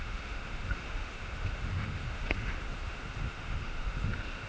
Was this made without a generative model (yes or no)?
no